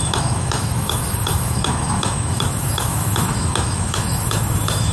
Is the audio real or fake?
fake